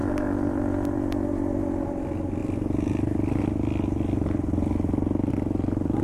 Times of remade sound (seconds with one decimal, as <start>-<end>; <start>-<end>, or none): 0.0-1.6